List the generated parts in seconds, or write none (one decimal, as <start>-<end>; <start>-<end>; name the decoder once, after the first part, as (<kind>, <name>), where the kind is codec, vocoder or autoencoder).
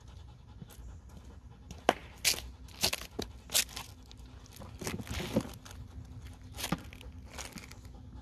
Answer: none